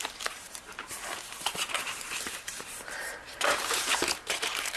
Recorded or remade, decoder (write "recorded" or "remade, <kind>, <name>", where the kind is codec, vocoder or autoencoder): remade, vocoder, BigVGAN v2